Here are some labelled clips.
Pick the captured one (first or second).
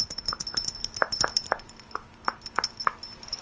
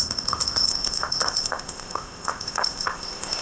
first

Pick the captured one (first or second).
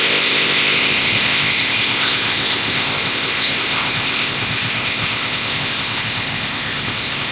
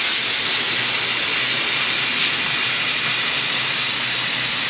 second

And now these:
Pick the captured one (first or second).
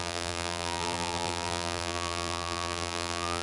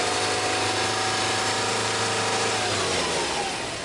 second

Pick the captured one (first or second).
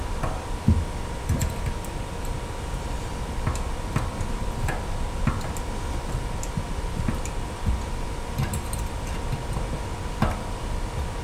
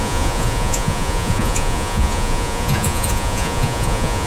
first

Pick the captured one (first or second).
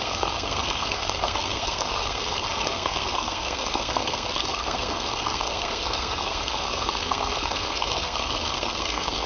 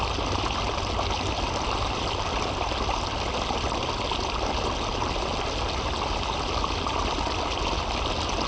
second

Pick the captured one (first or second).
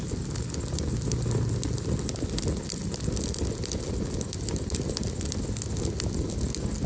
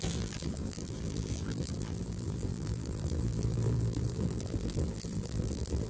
first